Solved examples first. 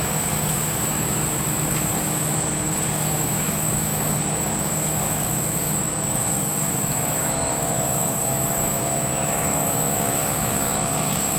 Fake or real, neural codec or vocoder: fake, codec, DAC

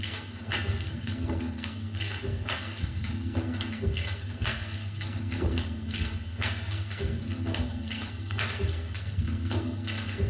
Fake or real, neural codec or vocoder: fake, codec, SNAC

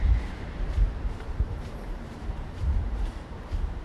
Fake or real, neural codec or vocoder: fake, vocoder, BigVGAN v2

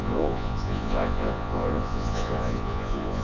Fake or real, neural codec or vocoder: fake, vocoder, Vocos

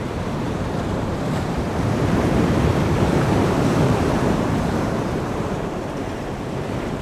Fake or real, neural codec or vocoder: fake, vocoder, BigVGAN v2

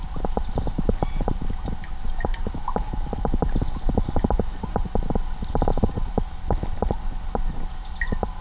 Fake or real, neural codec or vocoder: real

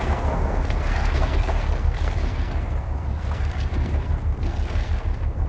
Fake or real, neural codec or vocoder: fake, codec, SNAC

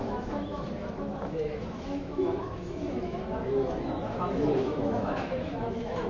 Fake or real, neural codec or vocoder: fake, autoencoder, DAC-VAE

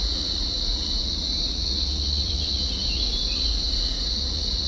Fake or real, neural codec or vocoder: fake, vocoder, Vocos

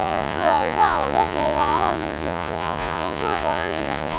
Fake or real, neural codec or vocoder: fake, vocoder, Vocos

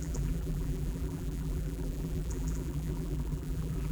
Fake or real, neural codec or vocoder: fake, vocoder, BigVGAN v2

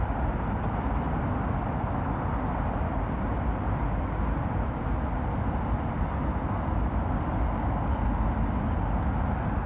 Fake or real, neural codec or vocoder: real